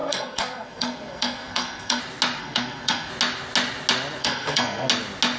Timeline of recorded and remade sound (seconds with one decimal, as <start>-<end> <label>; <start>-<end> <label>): 0.0-2.0 remade; 2.0-2.4 recorded; 2.4-3.1 remade; 3.1-4.2 recorded; 4.2-4.9 remade; 4.9-5.4 recorded